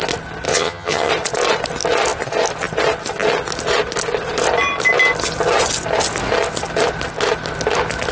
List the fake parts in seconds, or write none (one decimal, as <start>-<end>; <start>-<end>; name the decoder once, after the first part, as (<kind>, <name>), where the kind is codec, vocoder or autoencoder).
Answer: 0.5-1.1 (vocoder, HiFi-GAN)